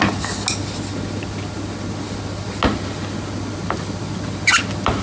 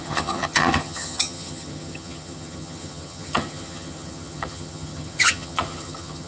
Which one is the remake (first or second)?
second